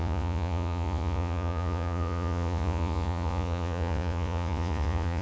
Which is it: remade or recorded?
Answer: remade